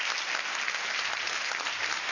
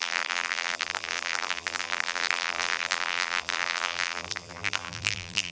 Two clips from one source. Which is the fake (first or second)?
second